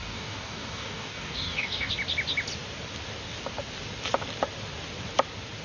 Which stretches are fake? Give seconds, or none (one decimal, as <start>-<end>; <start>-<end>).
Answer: 0.0-1.9